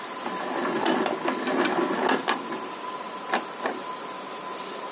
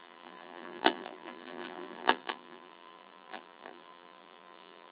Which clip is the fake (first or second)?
second